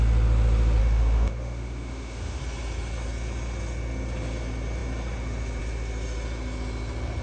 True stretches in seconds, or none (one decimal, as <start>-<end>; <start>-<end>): 0.0-0.8; 2.4-7.2